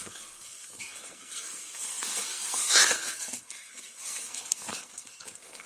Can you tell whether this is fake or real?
fake